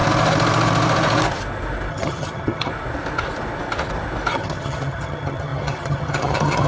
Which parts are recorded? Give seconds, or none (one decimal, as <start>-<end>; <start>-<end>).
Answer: 0.0-1.9; 2.7-4.3